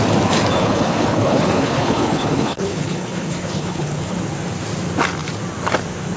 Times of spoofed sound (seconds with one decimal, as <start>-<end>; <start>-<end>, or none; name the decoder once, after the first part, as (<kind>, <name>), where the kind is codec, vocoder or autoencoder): 0.6-4.2 (codec, HILCodec)